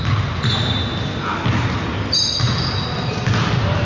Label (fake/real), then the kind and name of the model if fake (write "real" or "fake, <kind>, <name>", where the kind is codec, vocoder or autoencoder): real